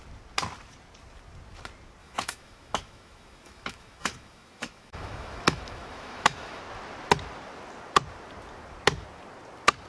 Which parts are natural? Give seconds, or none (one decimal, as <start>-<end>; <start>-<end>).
0.0-2.0; 6.6-9.9